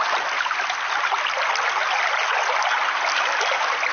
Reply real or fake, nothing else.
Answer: real